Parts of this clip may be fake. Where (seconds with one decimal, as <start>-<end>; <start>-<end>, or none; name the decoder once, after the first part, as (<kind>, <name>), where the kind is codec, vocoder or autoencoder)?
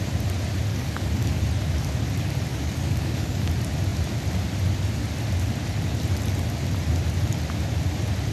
0.7-1.4 (codec, DAC); 2.5-3.5